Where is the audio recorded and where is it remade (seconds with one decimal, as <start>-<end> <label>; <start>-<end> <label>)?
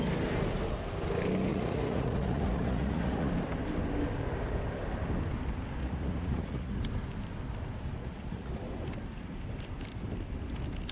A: 0.0-1.5 recorded; 1.5-3.3 remade; 3.3-5.8 recorded; 5.8-6.8 remade; 6.8-8.0 recorded; 8.0-8.5 remade; 8.5-10.9 recorded